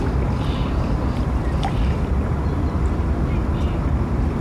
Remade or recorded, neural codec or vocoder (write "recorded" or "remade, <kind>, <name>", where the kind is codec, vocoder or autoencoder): recorded